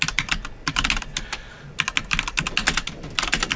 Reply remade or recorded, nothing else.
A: recorded